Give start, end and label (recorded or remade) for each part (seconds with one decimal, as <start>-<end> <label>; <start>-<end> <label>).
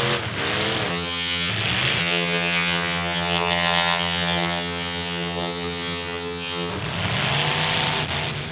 0.0-0.9 recorded; 0.9-1.5 remade; 1.5-2.0 recorded; 2.0-6.7 remade; 6.7-8.5 recorded